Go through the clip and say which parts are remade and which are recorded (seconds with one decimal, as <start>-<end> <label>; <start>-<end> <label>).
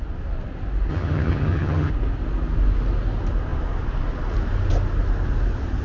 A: 0.0-0.9 recorded; 0.9-1.9 remade; 1.9-5.8 recorded